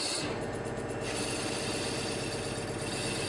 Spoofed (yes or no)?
no